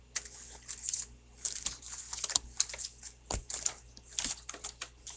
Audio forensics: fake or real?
real